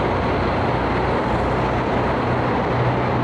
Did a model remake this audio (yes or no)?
no